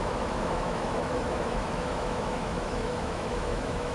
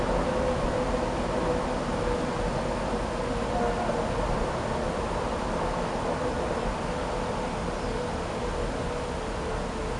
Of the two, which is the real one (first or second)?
second